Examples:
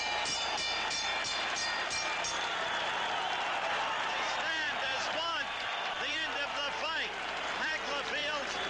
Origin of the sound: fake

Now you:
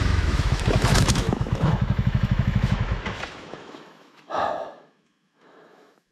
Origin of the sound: fake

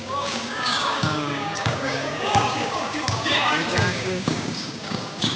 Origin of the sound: fake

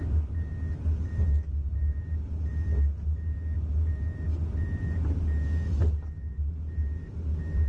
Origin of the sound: real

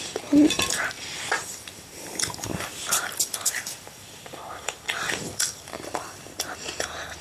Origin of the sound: fake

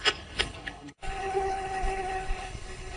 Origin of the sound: fake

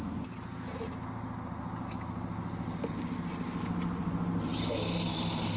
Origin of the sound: real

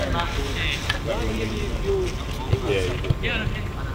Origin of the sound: real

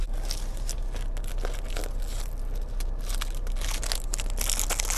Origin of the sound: real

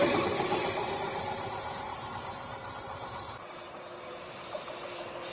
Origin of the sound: fake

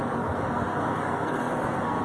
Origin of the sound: fake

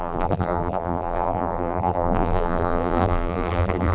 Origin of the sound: fake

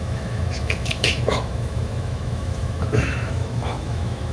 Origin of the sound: fake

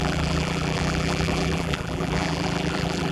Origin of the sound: fake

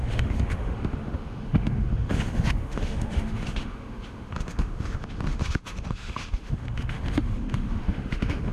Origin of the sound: fake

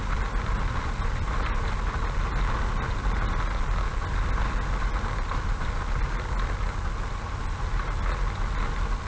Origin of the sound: real